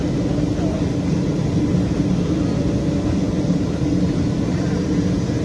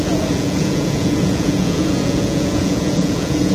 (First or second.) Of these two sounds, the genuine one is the first